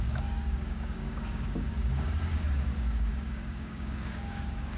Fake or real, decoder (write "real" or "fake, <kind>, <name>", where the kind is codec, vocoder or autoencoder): fake, codec, DAC